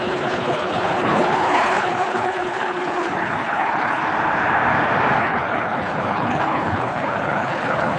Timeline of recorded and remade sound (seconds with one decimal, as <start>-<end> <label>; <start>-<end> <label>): 0.0-4.0 remade; 4.0-5.2 recorded; 5.2-8.0 remade